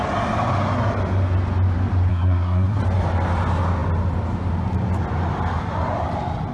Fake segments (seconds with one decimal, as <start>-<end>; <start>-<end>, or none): 2.1-2.8